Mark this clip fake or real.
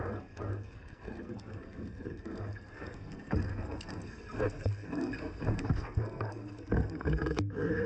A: fake